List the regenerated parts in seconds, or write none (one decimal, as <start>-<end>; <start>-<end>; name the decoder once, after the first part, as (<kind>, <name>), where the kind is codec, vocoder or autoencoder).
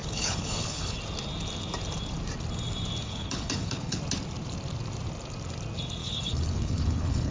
0.0-1.0 (codec, HILCodec); 3.0-4.0; 6.0-7.3